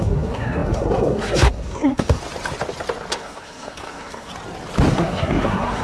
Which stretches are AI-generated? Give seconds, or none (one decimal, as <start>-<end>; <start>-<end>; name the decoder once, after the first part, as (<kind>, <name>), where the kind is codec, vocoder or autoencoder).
0.0-2.2 (codec, SNAC); 3.1-4.3; 4.9-5.8